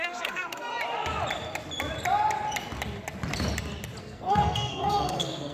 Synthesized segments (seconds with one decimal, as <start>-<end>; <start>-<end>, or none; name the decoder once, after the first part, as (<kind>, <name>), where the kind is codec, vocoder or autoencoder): 0.0-0.7 (codec, SNAC); 4.0-5.5